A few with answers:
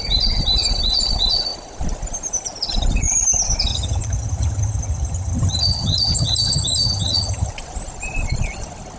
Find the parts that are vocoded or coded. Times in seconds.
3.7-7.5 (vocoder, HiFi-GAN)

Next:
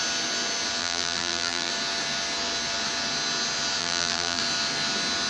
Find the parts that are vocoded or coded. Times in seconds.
0.8-1.7 (vocoder, BigVGAN v2); 3.8-4.4

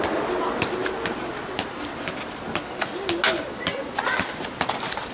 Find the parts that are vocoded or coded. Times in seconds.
none

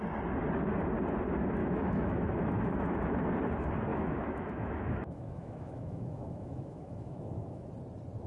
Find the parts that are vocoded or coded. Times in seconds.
1.6-3.3 (autoencoder, DAC-VAE); 3.9-7.7

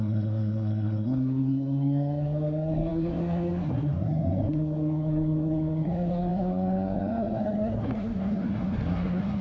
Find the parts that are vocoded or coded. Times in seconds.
0.0-9.4 (codec, SNAC)

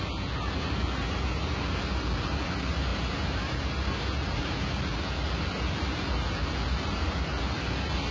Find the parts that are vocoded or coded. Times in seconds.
none